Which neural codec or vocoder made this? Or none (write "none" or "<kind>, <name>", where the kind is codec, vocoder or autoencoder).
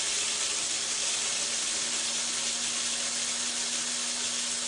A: none